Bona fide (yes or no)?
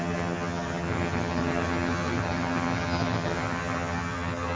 no